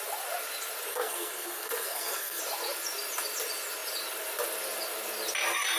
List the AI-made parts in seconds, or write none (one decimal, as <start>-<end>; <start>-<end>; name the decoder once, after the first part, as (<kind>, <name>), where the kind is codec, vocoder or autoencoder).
0.9-2.4 (codec, SNAC)